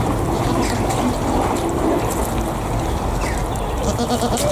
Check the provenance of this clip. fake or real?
real